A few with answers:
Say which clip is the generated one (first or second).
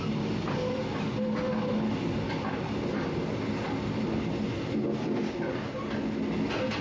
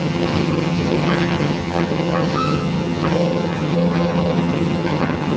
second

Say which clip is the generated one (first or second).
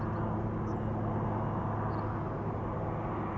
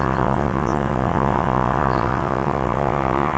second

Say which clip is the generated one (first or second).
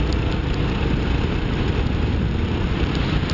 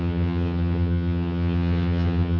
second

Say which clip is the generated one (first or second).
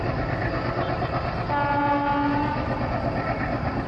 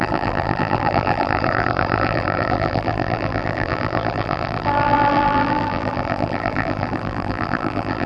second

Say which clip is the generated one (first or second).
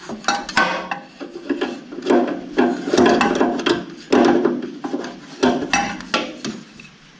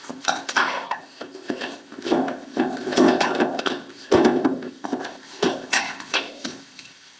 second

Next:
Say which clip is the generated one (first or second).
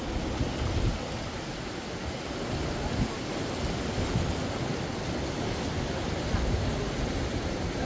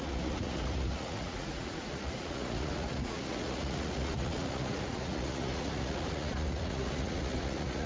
second